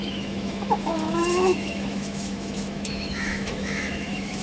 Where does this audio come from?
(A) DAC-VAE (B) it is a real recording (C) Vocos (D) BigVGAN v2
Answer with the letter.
A